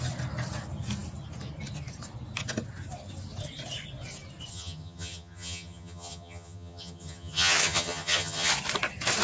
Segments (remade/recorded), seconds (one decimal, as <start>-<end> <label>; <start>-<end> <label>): 0.0-4.5 recorded; 4.5-8.5 remade; 8.5-9.2 recorded